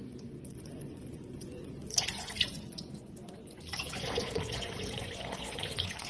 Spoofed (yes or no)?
yes